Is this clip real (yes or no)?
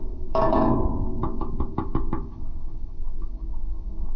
no